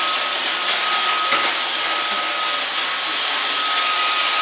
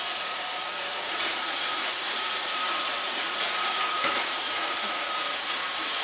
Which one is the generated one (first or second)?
second